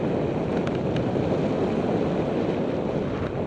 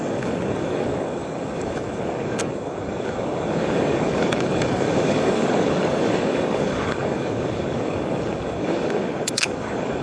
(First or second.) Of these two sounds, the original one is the first